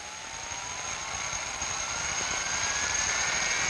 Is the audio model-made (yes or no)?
no